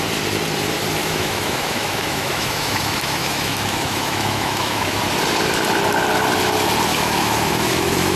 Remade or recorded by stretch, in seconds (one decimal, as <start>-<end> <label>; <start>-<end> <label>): 0.0-1.0 recorded; 1.0-5.0 remade; 5.0-6.9 recorded; 6.9-8.2 remade